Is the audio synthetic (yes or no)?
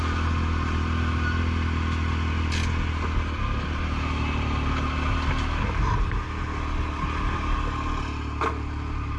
no